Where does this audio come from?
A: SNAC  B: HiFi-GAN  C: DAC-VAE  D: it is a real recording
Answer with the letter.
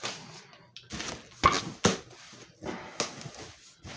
D